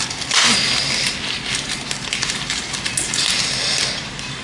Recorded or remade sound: recorded